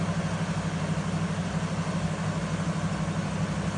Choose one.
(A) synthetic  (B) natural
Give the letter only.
B